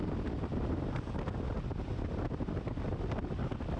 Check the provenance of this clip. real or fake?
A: real